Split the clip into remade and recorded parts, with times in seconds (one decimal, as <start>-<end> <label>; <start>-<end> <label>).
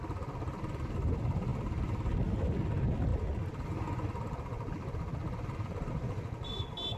0.0-7.0 recorded